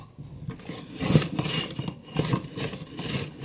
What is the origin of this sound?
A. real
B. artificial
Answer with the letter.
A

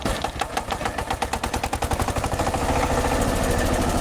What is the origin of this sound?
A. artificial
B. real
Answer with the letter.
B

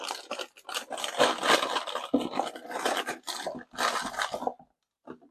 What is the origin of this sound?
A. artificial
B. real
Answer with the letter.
B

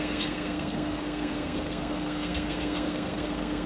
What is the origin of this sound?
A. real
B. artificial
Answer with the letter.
B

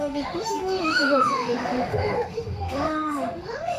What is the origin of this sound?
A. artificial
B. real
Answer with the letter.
A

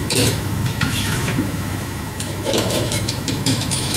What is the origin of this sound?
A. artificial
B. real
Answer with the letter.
A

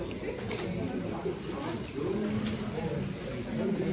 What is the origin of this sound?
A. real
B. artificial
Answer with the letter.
A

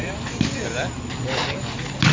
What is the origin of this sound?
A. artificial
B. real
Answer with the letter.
B